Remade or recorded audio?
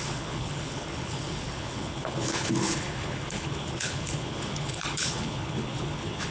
remade